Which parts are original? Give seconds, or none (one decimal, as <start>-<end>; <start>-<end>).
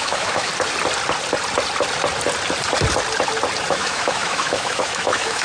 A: 0.5-3.7